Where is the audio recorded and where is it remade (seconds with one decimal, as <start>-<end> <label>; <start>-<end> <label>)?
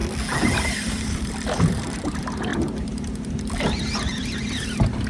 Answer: 0.0-0.7 recorded; 0.7-5.1 remade